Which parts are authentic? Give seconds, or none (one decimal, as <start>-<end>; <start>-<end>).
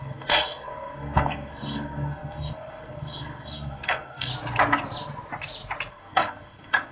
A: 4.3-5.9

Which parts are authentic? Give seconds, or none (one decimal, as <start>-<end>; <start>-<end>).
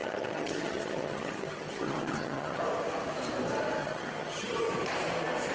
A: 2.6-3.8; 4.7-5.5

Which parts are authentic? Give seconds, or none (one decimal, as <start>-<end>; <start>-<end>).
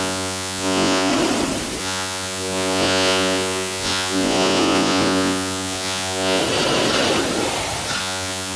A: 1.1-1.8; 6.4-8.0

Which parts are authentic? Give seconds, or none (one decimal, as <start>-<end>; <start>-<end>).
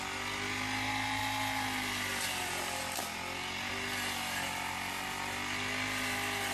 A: 0.0-6.5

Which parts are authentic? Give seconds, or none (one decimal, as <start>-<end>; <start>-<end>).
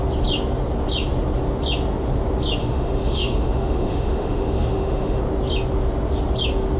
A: 0.0-2.6; 5.2-6.8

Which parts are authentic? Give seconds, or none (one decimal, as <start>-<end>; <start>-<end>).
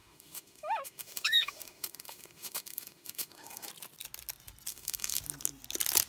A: 3.7-4.7; 5.2-6.1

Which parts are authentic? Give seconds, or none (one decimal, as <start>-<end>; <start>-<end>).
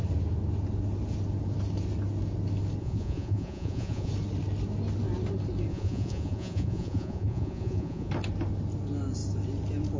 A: 0.0-2.8; 4.1-5.7; 8.1-10.0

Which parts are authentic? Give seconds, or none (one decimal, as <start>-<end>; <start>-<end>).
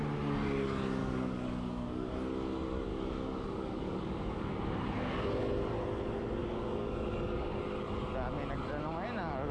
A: 0.0-1.0; 2.1-2.9; 4.5-6.4; 7.6-9.5